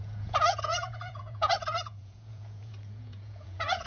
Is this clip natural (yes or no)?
no